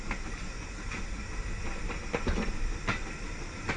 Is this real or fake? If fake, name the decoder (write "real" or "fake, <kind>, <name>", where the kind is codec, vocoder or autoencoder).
real